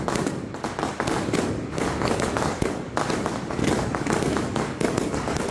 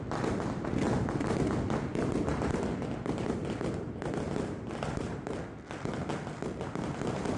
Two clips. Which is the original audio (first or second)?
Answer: second